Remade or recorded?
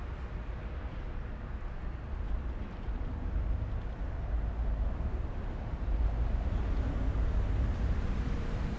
recorded